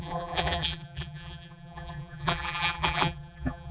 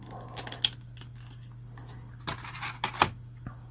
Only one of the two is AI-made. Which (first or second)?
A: first